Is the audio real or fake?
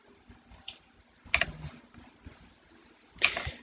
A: real